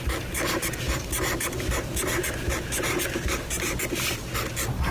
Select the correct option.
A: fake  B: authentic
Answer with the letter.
B